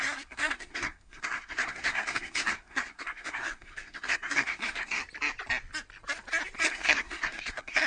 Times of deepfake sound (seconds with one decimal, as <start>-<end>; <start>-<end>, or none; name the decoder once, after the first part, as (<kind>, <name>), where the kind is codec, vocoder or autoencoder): 0.0-5.0 (codec, SNAC); 6.7-7.9